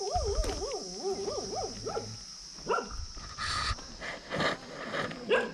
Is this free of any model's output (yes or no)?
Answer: yes